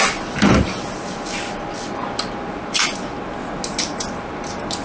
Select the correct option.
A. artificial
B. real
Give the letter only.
B